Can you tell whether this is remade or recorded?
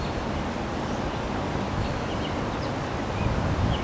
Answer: recorded